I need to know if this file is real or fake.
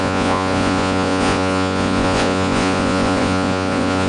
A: fake